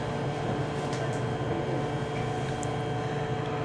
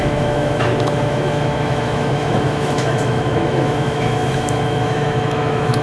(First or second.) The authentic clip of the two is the first